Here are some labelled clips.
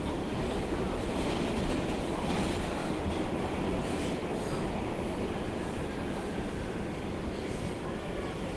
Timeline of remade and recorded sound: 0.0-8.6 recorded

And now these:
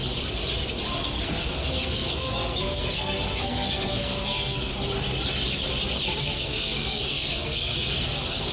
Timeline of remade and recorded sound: 0.0-1.0 recorded; 1.0-4.7 remade; 4.7-6.2 recorded; 6.2-8.5 remade

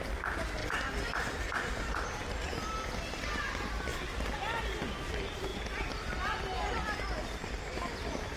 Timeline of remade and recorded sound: 0.0-8.4 recorded